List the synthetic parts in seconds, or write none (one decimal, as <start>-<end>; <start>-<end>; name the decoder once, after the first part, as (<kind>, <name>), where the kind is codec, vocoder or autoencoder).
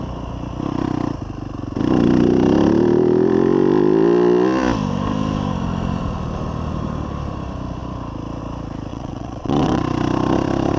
8.9-9.8 (vocoder, WaveNeXt)